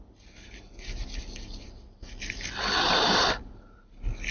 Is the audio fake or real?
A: real